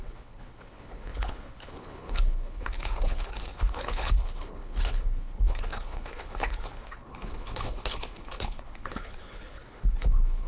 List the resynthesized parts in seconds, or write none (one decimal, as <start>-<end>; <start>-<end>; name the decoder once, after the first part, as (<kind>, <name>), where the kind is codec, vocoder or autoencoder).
0.0-10.5 (codec, HILCodec)